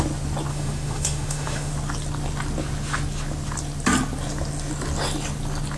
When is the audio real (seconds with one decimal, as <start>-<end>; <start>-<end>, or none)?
0.0-0.5; 1.7-5.8